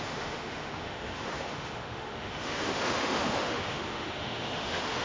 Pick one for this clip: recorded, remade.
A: remade